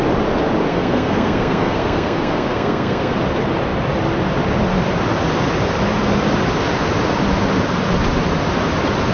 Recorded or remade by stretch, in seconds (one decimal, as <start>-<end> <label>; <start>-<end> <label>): 0.0-0.7 recorded; 0.7-3.1 remade; 3.1-9.1 recorded